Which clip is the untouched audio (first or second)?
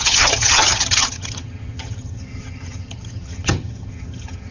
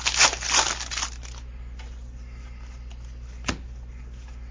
second